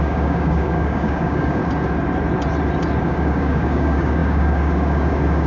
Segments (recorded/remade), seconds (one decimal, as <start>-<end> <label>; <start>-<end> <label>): 0.0-1.6 remade; 1.6-3.0 recorded; 3.0-5.5 remade